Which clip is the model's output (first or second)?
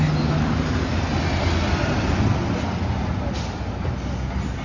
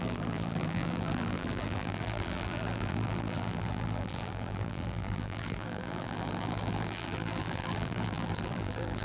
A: second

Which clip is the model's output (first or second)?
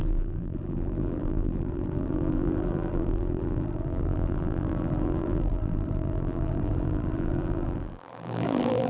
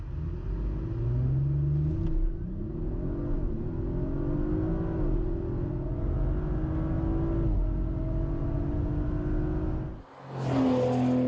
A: first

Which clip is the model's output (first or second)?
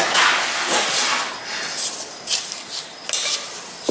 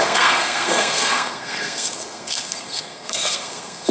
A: second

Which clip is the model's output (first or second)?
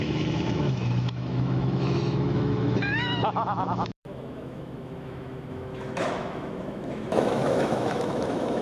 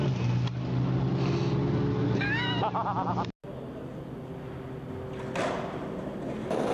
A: first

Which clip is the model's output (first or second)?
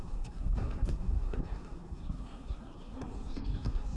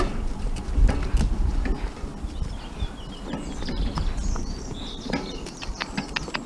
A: first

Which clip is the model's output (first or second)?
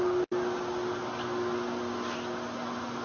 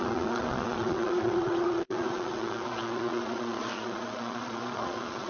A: second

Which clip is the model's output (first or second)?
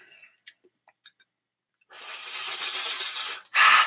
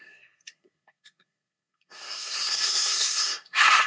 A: second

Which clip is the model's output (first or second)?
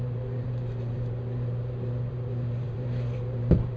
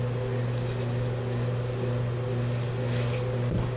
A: first